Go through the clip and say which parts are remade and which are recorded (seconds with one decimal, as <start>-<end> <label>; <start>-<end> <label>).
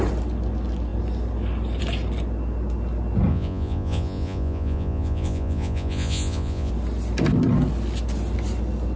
0.0-3.3 recorded; 3.3-6.7 remade; 6.7-9.0 recorded